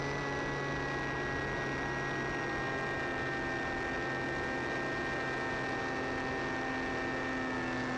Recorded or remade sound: recorded